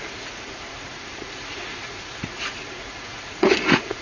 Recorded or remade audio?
remade